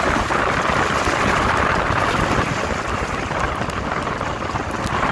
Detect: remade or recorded recorded